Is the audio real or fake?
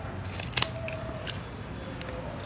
real